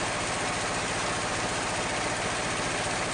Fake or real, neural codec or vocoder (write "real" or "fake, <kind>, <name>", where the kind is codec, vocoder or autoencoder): real